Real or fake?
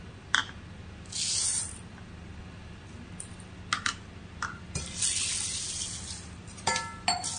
real